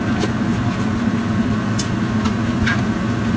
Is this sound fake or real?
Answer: real